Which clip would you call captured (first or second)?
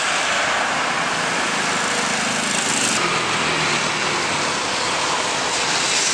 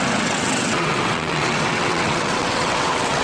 first